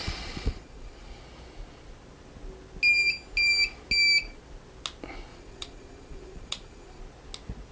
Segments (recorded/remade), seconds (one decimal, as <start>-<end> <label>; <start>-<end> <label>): 0.0-1.2 remade; 1.2-5.3 recorded; 5.3-7.0 remade; 7.0-7.7 recorded